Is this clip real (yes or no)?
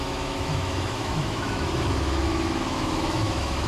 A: no